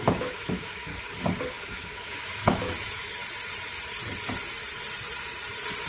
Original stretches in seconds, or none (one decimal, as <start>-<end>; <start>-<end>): 0.9-1.6; 3.2-5.9